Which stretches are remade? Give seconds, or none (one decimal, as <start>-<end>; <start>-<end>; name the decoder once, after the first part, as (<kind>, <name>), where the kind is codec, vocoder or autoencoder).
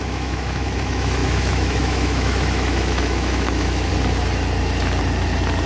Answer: 0.0-3.9 (autoencoder, DAC-VAE)